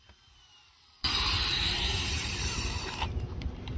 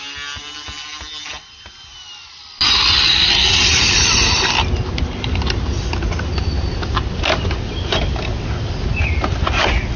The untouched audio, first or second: second